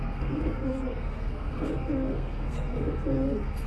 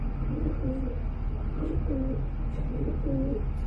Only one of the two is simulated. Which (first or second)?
first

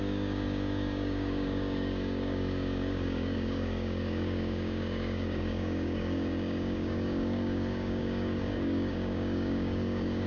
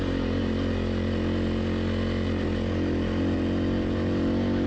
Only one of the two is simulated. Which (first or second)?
first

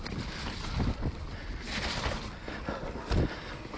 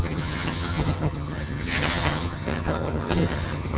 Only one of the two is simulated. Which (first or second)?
second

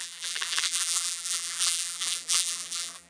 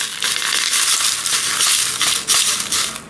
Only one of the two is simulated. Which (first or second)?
first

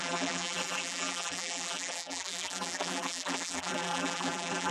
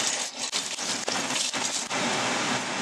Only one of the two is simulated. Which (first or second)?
first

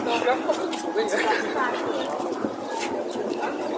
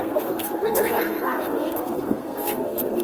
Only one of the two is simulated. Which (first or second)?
second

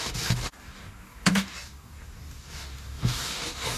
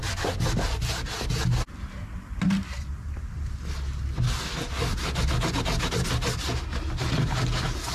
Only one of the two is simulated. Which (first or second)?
first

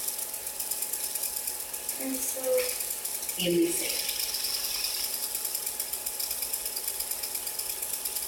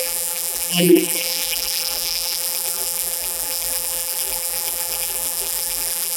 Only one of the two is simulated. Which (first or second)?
second